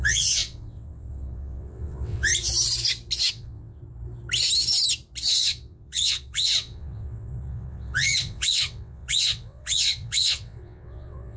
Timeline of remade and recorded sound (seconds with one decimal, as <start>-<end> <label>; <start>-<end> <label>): 0.0-2.3 remade; 2.3-3.3 recorded; 3.3-3.8 remade; 3.8-5.3 recorded; 5.3-11.4 remade